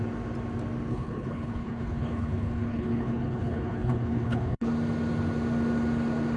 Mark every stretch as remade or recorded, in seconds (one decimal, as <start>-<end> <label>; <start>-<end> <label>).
0.0-0.9 recorded; 0.9-4.7 remade; 4.7-6.4 recorded